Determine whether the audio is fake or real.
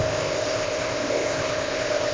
fake